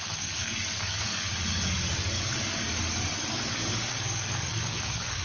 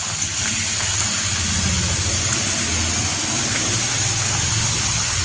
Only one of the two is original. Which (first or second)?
second